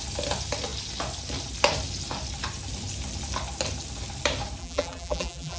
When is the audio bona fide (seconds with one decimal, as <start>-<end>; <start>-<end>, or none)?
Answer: 0.0-4.6